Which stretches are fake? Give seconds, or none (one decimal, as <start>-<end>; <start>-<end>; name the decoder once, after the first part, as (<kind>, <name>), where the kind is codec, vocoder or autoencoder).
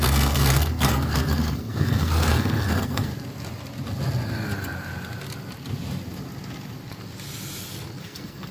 0.0-3.1 (codec, SNAC); 8.0-8.5